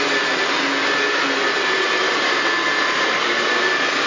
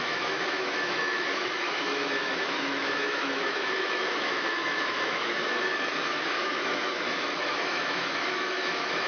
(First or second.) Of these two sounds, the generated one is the second